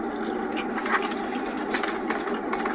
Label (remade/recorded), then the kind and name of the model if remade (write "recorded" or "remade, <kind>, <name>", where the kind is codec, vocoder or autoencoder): recorded